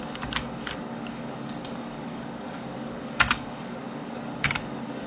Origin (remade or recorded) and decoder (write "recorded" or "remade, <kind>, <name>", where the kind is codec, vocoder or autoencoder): remade, codec, DAC